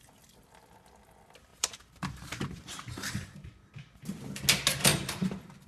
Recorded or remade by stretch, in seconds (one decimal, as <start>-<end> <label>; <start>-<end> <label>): 0.0-1.5 recorded; 1.5-3.7 remade; 3.7-4.9 recorded; 4.9-5.7 remade